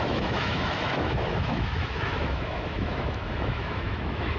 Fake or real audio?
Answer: fake